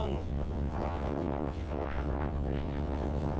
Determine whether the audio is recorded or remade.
remade